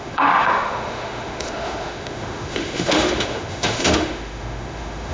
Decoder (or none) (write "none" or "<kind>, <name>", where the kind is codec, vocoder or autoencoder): autoencoder, DAC-VAE